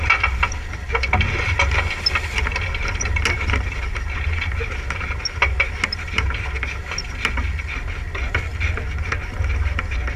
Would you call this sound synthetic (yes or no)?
no